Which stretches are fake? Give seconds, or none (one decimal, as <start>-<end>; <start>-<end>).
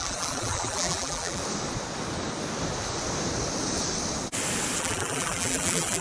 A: 0.0-1.4; 4.8-6.0